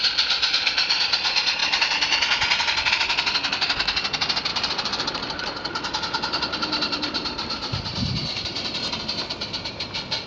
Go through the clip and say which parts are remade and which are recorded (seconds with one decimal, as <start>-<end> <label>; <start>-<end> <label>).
0.0-4.5 recorded; 4.5-9.0 remade; 9.0-10.3 recorded

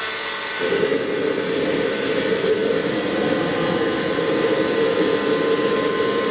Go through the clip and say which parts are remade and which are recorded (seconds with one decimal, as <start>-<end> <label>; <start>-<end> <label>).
0.0-6.3 recorded

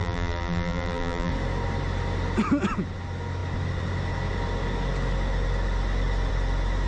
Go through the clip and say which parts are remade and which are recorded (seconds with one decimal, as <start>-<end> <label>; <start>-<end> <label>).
0.0-1.3 remade; 1.3-6.9 recorded